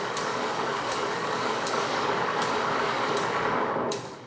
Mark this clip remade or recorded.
remade